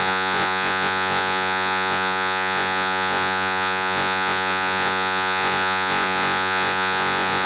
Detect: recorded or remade remade